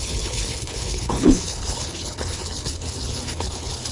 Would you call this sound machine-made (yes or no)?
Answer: yes